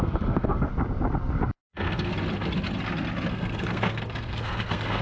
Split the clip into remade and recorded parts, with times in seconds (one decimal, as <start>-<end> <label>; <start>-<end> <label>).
0.0-0.7 remade; 0.7-1.7 recorded; 1.7-2.1 remade; 2.1-3.3 recorded; 3.3-5.0 remade